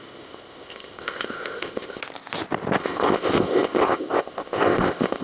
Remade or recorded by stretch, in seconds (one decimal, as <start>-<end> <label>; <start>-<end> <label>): 0.0-2.0 remade; 2.0-2.8 recorded; 2.8-5.2 remade